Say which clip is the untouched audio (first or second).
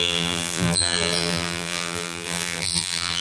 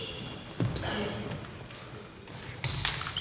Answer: second